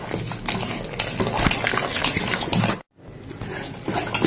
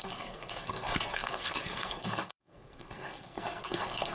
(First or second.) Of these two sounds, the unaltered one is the first